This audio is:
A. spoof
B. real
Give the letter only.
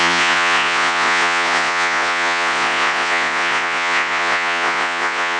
A